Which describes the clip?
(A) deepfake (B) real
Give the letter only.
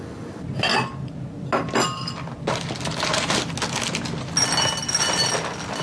B